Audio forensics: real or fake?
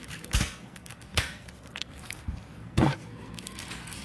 fake